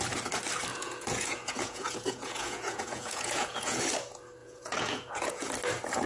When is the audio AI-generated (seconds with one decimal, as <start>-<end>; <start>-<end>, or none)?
0.7-3.8; 4.4-5.5